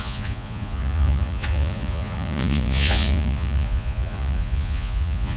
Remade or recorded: remade